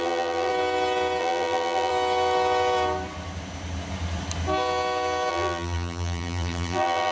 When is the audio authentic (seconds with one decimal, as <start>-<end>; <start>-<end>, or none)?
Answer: 0.5-1.2; 1.9-5.3